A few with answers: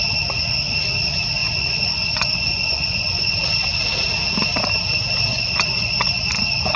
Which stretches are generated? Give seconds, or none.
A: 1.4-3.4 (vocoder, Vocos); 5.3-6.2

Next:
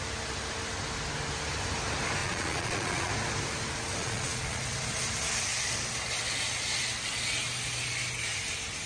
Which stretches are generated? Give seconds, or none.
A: 2.2-3.1 (vocoder, Vocos); 4.0-4.6

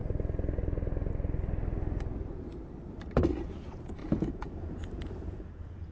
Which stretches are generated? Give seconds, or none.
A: 4.0-5.9 (vocoder, Vocos)

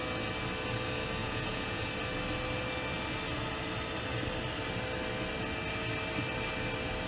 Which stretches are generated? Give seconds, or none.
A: 1.2-1.9 (vocoder, Vocos)

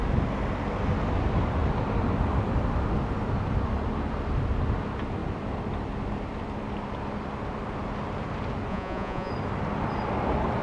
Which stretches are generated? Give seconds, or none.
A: 8.7-9.3 (vocoder, Vocos)